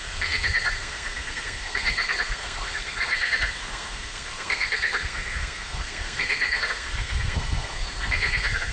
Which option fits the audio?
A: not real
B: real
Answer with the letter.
A